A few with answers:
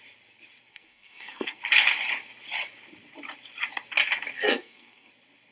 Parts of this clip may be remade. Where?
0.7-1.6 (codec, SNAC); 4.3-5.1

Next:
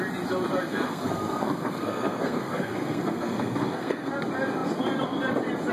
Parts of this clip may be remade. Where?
0.7-4.1 (codec, SNAC)

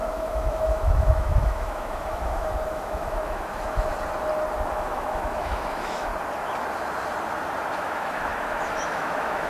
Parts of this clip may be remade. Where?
0.0-3.9 (autoencoder, DAC-VAE); 4.7-6.1; 7.7-9.5

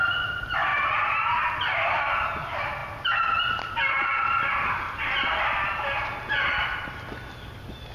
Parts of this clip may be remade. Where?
none

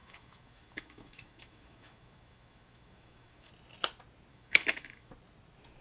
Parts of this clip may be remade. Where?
0.0-3.5 (autoencoder, DAC-VAE); 4.3-5.1

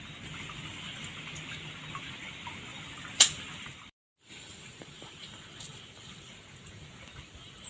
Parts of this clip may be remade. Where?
2.7-5.4 (vocoder, BigVGAN v2)